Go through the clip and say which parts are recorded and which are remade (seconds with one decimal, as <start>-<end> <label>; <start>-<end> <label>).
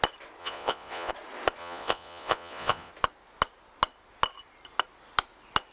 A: 0.0-0.4 recorded; 0.4-1.1 remade; 1.1-1.6 recorded; 1.6-2.9 remade; 2.9-5.7 recorded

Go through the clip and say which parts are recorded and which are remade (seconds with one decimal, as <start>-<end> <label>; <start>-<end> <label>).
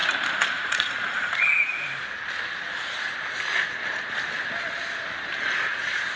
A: 0.0-0.6 recorded; 0.6-1.7 remade; 1.7-5.4 recorded; 5.4-6.2 remade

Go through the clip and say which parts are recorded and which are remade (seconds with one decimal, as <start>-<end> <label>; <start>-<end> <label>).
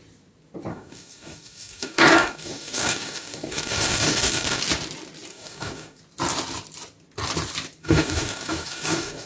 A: 0.0-0.7 recorded; 0.7-4.6 remade; 4.6-5.3 recorded; 5.3-6.0 remade; 6.0-7.8 recorded; 7.8-9.3 remade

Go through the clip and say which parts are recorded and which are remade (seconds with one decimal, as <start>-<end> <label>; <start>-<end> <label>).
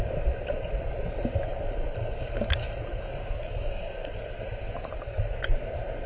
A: 0.0-6.1 recorded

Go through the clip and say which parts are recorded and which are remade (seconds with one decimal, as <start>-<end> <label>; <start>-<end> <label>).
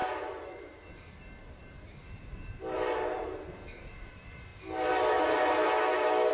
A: 0.0-4.5 remade; 4.5-6.3 recorded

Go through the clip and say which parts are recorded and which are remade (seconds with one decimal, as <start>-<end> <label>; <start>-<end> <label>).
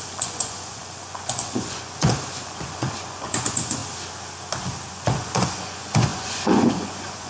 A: 0.0-3.8 remade; 3.8-4.9 recorded; 4.9-7.3 remade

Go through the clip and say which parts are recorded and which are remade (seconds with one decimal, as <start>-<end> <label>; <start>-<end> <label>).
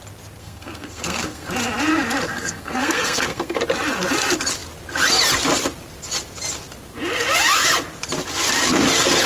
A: 0.0-0.4 recorded; 0.4-1.5 remade; 1.5-2.3 recorded; 2.3-3.6 remade; 3.6-9.3 recorded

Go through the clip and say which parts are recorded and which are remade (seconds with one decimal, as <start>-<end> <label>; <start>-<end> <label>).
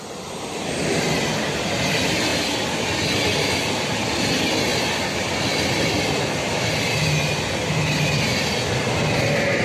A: 0.0-9.6 recorded